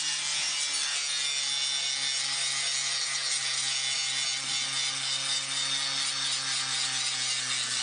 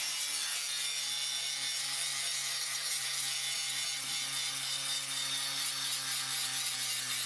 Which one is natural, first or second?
first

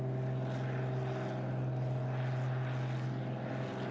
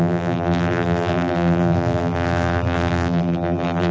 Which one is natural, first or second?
first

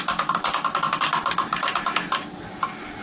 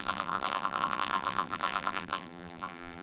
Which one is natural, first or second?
first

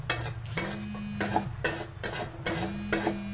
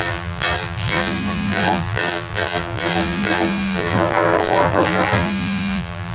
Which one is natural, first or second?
first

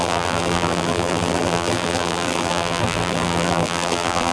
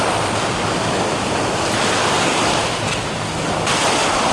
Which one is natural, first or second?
second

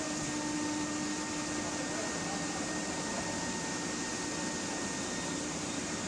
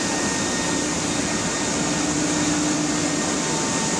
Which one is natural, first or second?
second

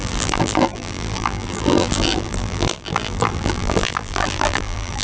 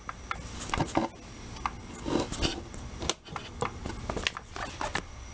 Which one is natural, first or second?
second